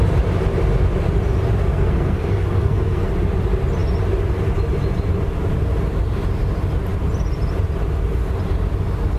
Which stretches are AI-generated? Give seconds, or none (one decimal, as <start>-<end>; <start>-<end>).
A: 1.7-3.1